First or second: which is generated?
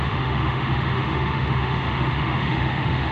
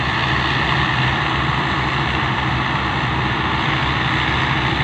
first